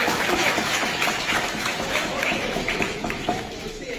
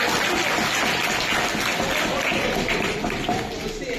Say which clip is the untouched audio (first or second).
second